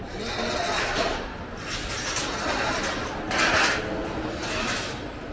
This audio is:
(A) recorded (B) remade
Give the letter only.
A